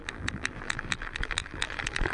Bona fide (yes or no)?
no